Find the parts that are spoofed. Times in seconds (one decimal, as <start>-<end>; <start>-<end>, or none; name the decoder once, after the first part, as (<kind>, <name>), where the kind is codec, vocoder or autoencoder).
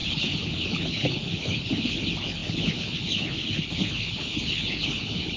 0.0-5.4 (codec, HILCodec)